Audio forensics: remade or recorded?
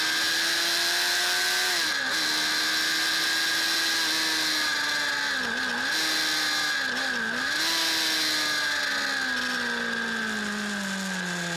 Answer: recorded